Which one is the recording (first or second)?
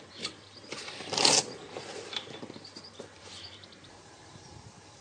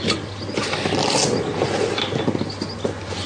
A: second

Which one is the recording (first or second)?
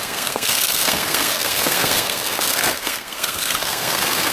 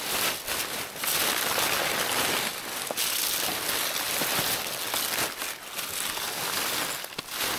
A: second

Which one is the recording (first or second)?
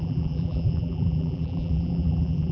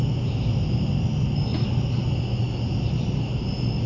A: second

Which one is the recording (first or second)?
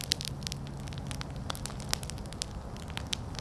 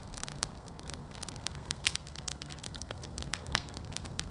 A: first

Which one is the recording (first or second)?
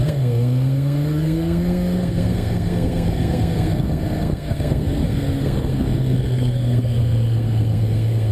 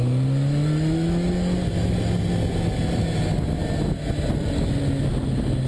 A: second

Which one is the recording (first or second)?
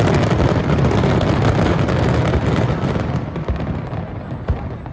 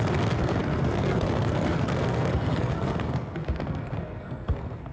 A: first